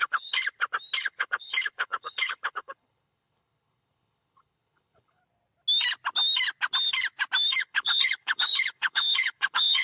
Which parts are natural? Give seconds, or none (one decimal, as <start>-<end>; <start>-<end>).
0.4-1.0; 5.2-7.6